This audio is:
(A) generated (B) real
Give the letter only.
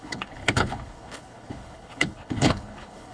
A